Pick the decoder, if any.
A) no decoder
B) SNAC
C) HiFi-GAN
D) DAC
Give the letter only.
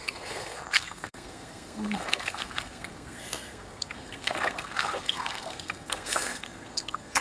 B